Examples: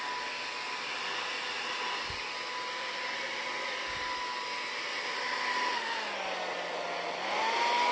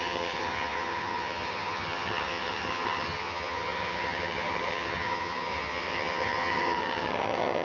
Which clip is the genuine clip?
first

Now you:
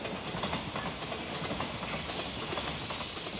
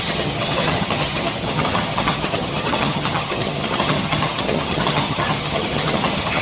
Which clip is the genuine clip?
first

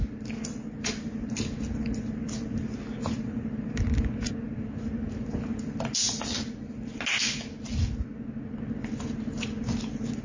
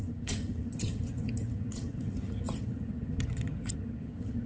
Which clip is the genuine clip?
first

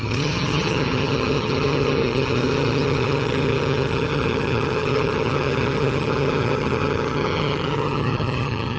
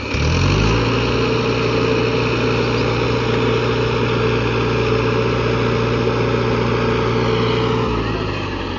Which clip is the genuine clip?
second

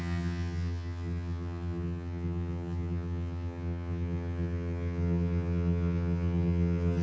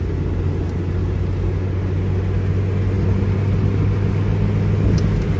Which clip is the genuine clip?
second